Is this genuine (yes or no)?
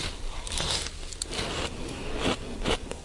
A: yes